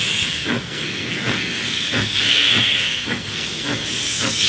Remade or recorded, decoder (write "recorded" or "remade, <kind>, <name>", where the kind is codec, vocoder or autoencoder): remade, codec, SNAC